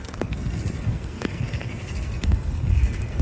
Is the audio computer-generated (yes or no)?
yes